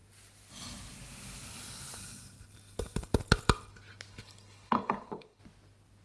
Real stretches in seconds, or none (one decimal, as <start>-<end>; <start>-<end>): 0.0-4.1; 5.4-6.0